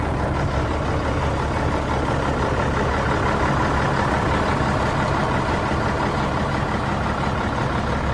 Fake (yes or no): no